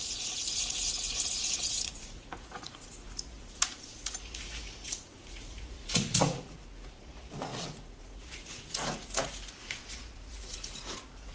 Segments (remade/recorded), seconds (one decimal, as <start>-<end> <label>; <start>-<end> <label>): 0.0-11.3 remade